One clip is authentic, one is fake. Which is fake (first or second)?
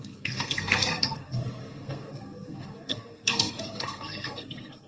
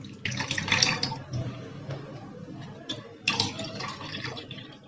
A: first